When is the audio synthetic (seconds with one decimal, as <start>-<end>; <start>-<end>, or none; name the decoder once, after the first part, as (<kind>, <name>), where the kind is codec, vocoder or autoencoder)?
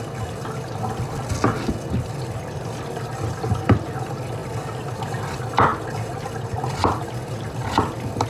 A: none